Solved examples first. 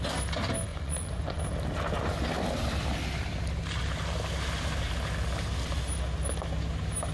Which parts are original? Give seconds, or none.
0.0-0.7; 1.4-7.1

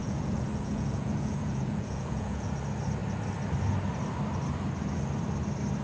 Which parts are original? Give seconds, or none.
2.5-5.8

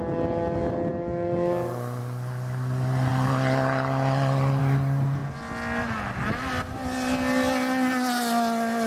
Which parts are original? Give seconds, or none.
0.0-8.9

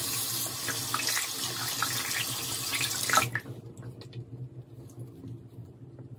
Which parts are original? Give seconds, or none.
0.0-6.2